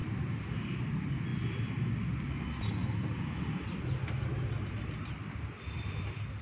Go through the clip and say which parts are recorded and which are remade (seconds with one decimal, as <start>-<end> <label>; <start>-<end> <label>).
0.0-6.4 recorded